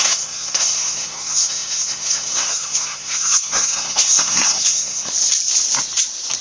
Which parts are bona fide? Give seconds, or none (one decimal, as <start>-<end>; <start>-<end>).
5.1-6.4